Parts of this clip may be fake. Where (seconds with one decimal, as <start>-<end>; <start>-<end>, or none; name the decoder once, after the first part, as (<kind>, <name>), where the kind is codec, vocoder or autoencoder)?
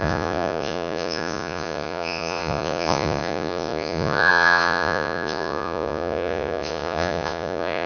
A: 0.0-7.9 (vocoder, Vocos)